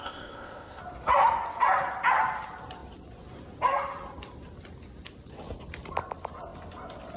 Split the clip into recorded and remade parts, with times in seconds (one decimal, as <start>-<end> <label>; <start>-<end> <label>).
0.0-0.8 remade; 0.8-7.2 recorded